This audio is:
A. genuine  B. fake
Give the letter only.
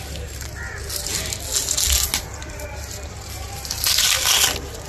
A